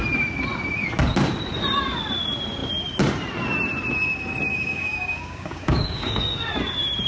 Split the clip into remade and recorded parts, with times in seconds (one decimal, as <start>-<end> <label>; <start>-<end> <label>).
0.0-4.5 recorded; 4.5-6.5 remade; 6.5-7.1 recorded